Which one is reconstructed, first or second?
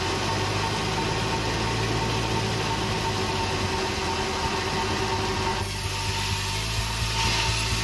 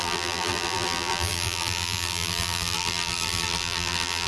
second